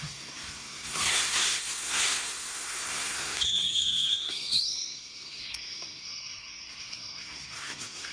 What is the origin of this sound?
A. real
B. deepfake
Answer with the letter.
B